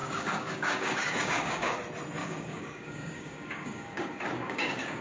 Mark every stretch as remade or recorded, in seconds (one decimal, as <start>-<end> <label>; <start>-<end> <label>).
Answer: 0.0-1.8 remade; 1.8-2.2 recorded; 2.2-5.0 remade